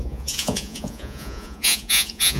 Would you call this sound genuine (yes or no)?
no